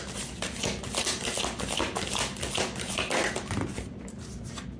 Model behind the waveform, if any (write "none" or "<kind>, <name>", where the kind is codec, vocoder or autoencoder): none